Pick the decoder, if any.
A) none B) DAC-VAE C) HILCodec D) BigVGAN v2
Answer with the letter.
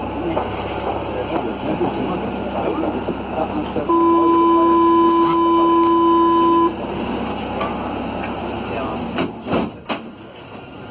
A